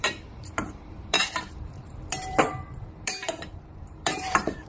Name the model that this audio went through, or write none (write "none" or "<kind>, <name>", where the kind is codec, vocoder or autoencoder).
vocoder, BigVGAN v2